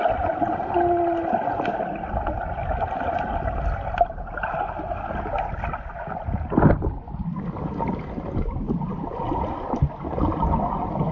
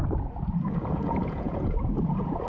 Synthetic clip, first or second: second